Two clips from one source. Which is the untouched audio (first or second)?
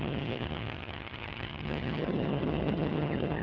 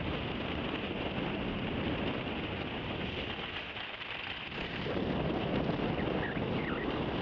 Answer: second